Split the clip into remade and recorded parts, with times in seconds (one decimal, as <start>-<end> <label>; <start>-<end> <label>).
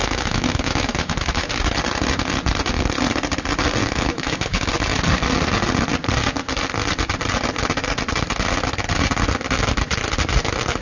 0.0-1.5 remade; 1.5-3.8 recorded; 3.8-4.7 remade; 4.7-10.8 recorded